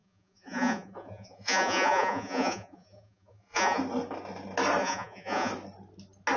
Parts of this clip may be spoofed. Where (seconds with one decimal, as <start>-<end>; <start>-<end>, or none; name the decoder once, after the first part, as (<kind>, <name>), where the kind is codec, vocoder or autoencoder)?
0.0-3.8 (vocoder, Vocos); 4.8-5.5